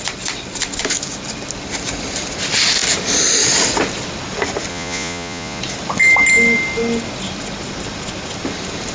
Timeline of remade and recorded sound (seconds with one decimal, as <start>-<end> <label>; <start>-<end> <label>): 0.0-4.7 recorded; 4.7-5.6 remade; 5.6-8.9 recorded